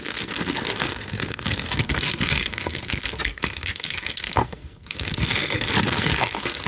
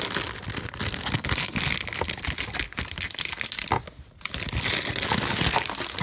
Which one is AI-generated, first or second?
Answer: first